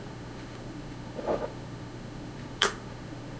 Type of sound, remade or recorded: remade